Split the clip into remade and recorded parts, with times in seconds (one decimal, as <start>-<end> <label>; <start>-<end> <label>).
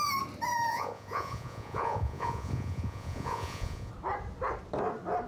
0.0-0.7 recorded; 0.7-3.9 remade; 3.9-5.3 recorded